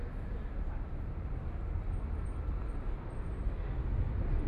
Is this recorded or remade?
recorded